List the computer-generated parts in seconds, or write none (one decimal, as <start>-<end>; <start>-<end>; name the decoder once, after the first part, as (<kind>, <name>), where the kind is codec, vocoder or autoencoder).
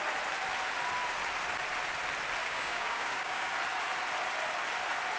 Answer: 2.4-3.5 (codec, DAC)